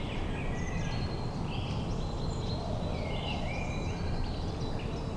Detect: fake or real real